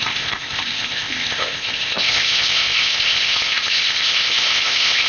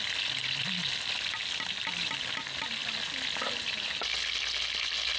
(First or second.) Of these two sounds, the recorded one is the second